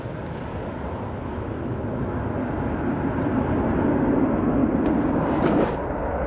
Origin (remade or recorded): recorded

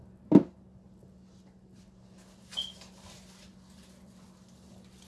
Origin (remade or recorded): recorded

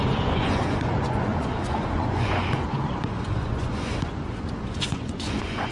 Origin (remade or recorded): remade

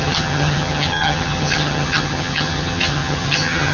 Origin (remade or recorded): remade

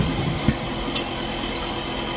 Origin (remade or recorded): recorded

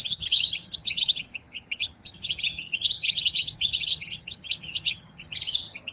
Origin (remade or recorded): remade